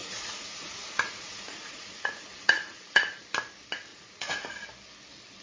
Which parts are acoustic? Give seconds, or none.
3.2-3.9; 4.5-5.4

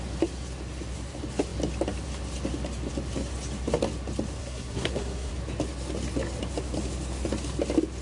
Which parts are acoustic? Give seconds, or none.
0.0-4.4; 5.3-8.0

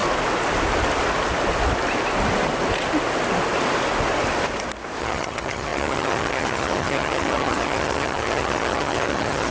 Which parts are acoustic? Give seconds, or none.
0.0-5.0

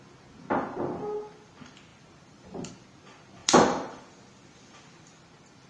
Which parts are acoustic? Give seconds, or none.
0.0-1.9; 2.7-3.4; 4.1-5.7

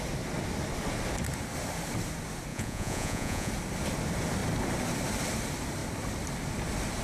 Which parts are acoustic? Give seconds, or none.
0.0-2.5; 3.5-7.0

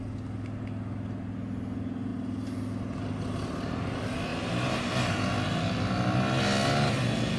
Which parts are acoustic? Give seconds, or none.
0.0-4.3; 4.9-7.4

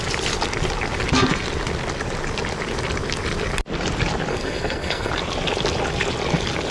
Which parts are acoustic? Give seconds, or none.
0.0-4.3; 5.1-6.7

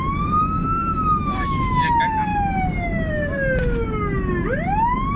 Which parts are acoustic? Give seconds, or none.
0.0-0.8; 1.8-5.2